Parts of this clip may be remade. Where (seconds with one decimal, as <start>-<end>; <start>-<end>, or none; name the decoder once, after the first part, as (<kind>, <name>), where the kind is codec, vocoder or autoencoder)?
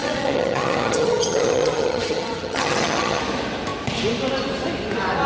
0.0-3.2 (vocoder, HiFi-GAN)